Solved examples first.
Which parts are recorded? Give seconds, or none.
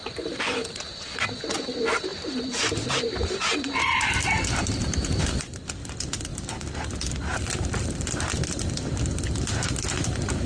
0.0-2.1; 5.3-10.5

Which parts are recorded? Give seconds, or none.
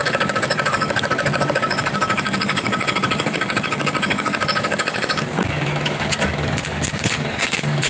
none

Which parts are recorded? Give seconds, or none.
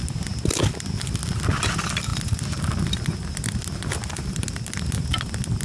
0.0-5.6